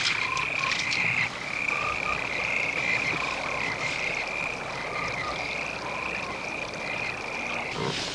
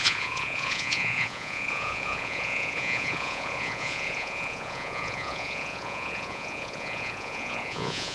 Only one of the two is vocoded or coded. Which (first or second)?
second